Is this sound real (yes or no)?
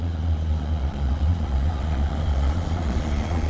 no